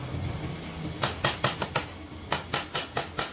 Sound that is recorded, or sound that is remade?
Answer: recorded